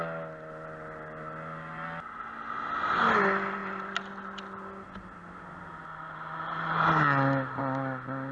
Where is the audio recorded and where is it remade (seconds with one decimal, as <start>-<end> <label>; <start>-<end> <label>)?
0.0-8.3 recorded